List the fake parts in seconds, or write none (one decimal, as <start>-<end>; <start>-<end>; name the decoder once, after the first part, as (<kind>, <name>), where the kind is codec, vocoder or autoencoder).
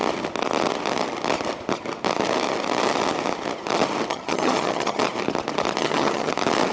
4.1-5.0 (vocoder, HiFi-GAN); 5.8-6.3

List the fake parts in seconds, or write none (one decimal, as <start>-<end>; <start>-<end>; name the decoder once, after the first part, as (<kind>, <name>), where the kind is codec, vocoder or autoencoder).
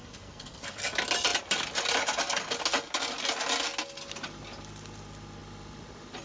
0.0-0.8 (codec, SNAC)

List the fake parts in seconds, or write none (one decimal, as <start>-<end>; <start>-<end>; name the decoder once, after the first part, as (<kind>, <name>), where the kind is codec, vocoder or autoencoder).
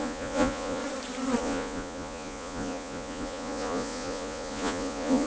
0.0-0.8 (vocoder, Vocos); 1.4-5.3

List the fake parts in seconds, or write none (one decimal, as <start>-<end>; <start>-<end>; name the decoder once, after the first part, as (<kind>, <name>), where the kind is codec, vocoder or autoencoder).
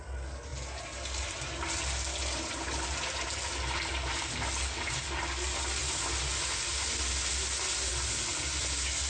none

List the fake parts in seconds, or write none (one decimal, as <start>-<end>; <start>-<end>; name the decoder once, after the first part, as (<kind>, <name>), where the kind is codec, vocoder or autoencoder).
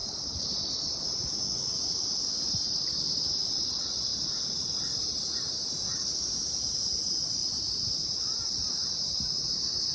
3.0-9.9 (vocoder, BigVGAN v2)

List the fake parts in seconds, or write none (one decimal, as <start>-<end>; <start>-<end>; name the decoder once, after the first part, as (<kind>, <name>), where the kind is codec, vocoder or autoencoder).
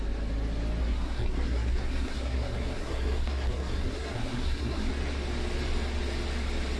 0.8-4.9 (codec, SNAC)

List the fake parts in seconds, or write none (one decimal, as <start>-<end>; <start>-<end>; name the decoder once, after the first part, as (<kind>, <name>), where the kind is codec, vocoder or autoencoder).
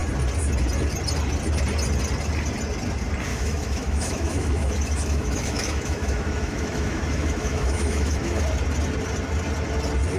3.3-8.4 (autoencoder, DAC-VAE)